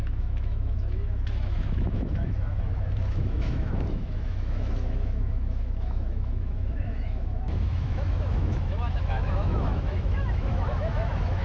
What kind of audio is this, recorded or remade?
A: remade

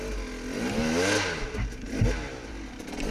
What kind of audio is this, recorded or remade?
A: recorded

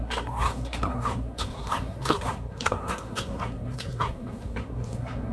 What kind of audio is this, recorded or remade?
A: remade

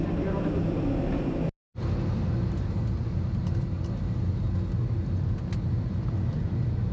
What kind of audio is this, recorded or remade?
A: recorded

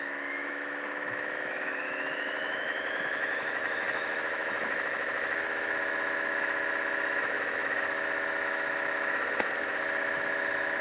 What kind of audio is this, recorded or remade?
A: remade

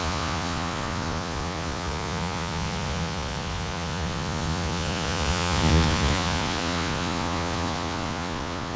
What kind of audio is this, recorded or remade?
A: remade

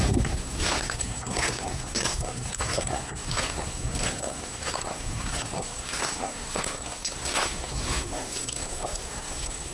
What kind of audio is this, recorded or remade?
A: remade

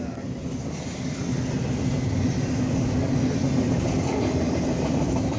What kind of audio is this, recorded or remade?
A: recorded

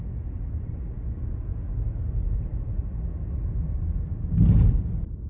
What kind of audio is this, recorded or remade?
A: recorded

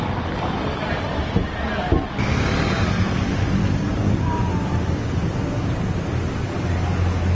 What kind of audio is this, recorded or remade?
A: recorded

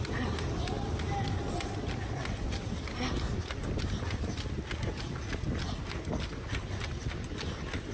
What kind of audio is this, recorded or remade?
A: recorded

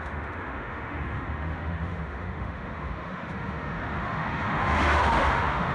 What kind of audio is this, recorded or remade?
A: remade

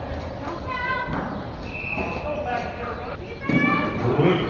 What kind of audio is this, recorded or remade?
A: recorded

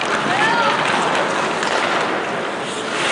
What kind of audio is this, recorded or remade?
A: recorded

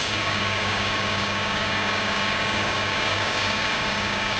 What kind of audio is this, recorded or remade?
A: remade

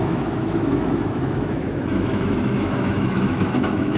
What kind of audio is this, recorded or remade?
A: remade